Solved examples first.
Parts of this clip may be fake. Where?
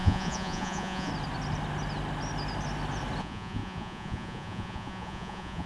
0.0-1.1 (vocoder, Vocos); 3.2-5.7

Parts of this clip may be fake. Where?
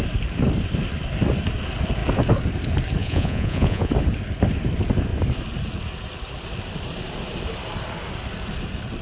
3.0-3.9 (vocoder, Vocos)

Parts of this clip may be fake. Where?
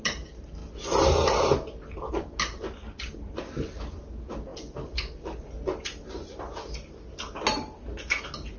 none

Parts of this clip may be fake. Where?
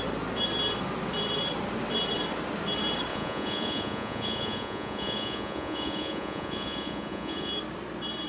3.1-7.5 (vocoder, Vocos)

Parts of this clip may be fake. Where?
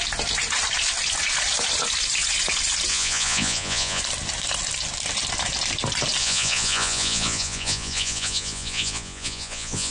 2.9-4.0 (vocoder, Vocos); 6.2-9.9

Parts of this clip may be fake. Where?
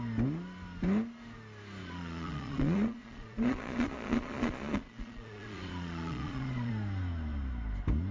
1.8-6.7 (vocoder, Vocos)